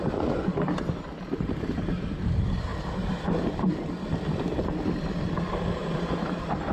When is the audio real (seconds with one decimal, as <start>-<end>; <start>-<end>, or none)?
0.0-6.7